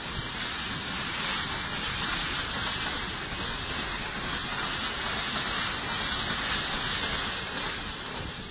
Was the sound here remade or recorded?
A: recorded